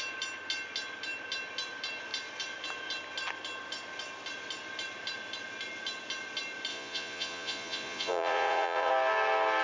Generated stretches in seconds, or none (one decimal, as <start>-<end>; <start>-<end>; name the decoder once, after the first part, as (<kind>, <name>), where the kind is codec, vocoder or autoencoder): 6.7-8.9 (vocoder, Vocos)